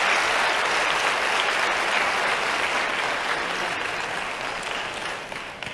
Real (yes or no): yes